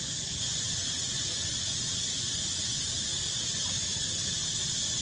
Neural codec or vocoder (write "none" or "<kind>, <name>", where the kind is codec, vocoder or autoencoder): vocoder, Vocos